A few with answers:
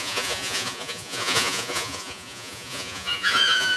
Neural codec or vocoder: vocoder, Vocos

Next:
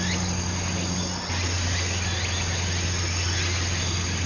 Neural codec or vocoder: none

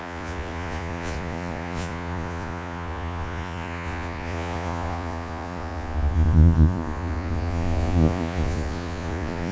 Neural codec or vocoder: vocoder, Vocos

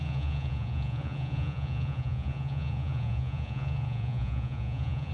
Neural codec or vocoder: vocoder, Vocos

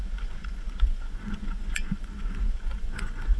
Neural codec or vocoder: vocoder, Vocos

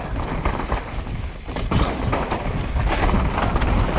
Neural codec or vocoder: none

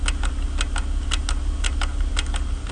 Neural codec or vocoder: none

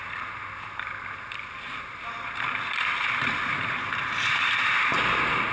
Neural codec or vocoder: none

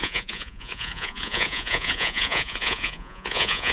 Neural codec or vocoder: vocoder, Vocos